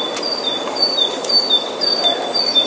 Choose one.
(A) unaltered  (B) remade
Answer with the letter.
A